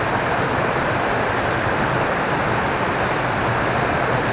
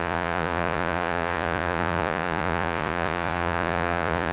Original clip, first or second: first